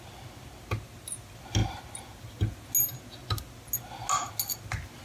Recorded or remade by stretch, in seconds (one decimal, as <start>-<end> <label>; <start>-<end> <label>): 0.0-5.0 recorded